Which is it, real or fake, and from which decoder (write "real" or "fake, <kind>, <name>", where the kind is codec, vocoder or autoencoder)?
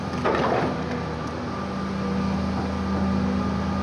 real